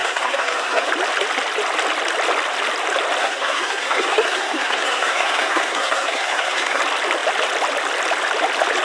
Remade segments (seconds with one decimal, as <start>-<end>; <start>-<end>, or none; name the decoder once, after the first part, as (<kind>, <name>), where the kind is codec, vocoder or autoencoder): 0.0-0.9 (codec, SNAC); 3.2-6.8